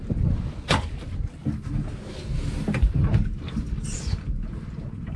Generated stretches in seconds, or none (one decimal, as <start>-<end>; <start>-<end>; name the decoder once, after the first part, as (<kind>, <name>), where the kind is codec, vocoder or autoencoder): none